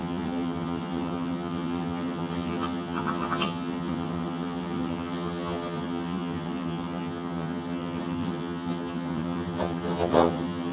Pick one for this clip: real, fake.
fake